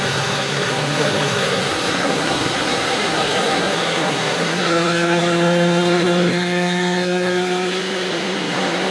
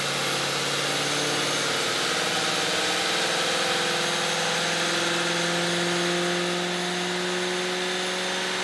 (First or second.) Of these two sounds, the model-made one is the first